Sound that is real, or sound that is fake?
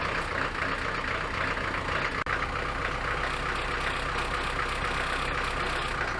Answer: real